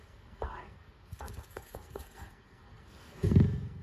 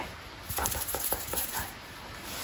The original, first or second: second